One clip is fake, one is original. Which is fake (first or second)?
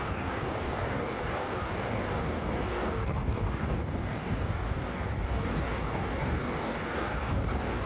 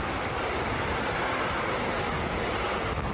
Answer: first